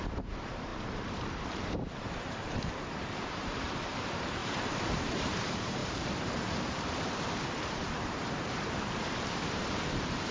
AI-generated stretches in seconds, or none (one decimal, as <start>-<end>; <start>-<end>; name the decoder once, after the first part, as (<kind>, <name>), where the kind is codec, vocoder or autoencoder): 0.0-10.3 (vocoder, BigVGAN v2)